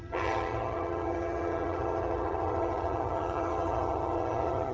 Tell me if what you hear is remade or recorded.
remade